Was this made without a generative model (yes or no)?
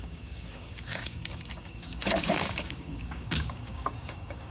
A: no